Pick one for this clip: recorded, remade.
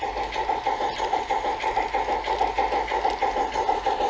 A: recorded